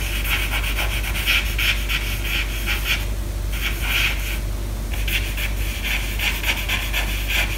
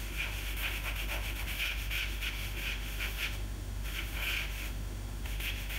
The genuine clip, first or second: first